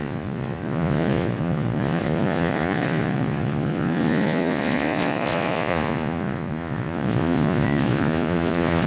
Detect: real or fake fake